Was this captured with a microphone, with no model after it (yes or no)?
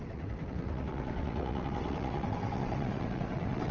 no